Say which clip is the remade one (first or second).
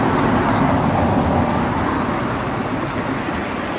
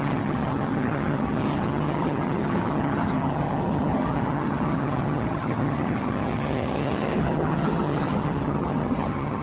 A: second